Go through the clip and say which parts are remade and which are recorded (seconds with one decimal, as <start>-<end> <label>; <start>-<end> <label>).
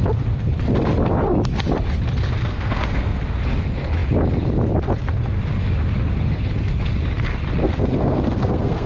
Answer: 0.0-2.4 recorded; 2.4-3.2 remade; 3.2-7.6 recorded; 7.6-8.9 remade